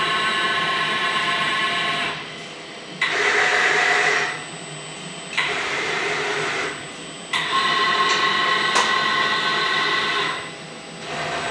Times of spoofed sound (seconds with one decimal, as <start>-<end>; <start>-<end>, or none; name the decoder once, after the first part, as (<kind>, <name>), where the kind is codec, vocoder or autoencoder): 1.0-1.6 (vocoder, BigVGAN v2); 3.5-8.1